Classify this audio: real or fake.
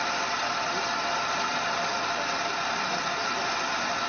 real